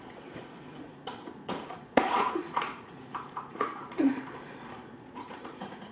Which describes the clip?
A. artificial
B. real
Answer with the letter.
A